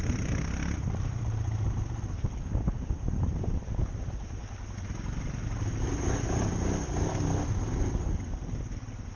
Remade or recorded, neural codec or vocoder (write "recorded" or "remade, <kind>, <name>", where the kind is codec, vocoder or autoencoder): recorded